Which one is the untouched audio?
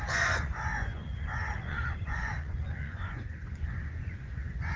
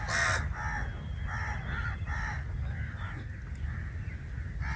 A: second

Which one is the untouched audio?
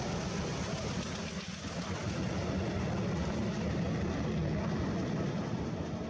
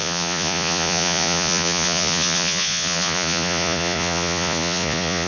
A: first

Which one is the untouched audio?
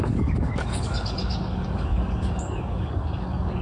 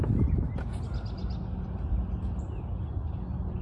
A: second